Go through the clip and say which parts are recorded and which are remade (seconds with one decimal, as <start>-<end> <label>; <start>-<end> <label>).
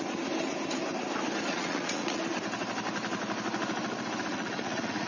0.0-1.5 recorded; 1.5-2.2 remade; 2.2-4.3 recorded; 4.3-5.1 remade